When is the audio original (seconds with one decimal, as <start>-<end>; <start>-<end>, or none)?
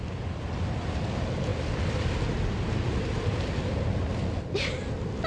0.6-5.3